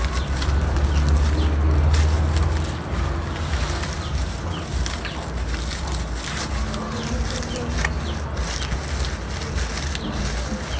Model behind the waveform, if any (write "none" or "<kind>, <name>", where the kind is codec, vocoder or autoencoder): none